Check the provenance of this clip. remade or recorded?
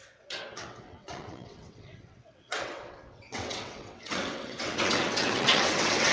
remade